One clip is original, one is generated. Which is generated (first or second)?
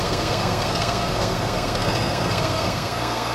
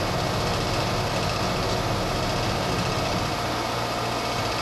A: first